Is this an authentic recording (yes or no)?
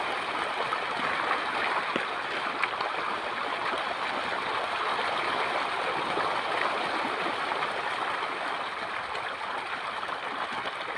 yes